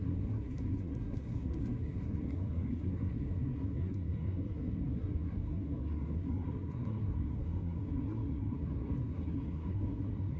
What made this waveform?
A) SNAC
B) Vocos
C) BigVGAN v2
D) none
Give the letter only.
A